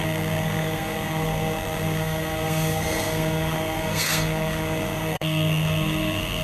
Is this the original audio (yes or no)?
no